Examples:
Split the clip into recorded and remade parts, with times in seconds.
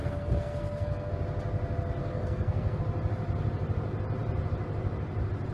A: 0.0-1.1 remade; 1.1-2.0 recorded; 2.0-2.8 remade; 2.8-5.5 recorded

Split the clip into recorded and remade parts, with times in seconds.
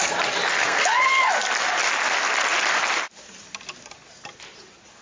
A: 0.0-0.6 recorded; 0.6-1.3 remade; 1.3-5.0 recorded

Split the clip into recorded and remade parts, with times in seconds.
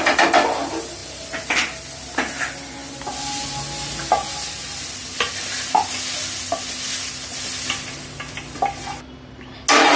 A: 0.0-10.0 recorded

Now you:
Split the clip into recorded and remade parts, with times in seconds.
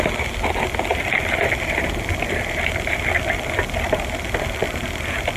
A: 0.0-5.4 recorded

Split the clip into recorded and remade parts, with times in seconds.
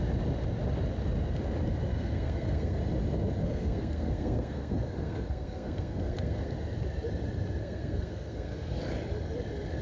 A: 0.0-1.9 recorded; 1.9-2.8 remade; 2.8-3.4 recorded; 3.4-6.5 remade; 6.5-7.6 recorded; 7.6-8.8 remade; 8.8-9.8 recorded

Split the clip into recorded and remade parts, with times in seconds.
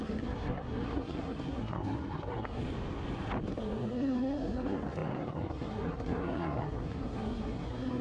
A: 0.0-2.6 remade; 2.6-3.5 recorded; 3.5-8.0 remade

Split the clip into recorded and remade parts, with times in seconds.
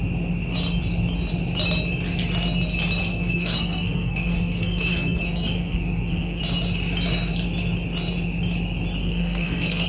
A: 0.0-3.0 recorded; 3.0-6.4 remade; 6.4-9.0 recorded; 9.0-9.9 remade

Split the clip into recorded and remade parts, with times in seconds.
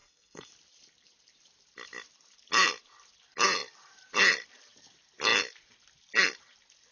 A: 0.0-0.5 remade; 0.5-6.9 recorded